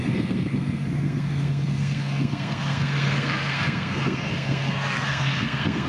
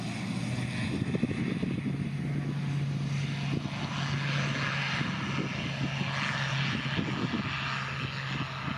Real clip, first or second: second